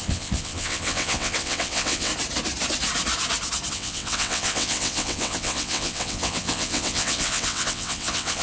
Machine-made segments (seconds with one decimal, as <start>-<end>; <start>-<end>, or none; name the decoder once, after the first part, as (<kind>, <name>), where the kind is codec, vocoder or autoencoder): 0.0-2.1 (vocoder, WaveNeXt); 3.7-8.4